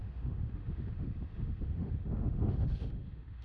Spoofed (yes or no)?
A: yes